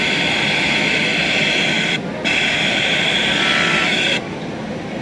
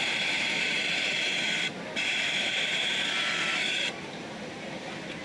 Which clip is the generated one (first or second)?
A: second